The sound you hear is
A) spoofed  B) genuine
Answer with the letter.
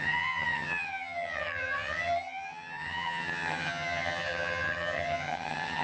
A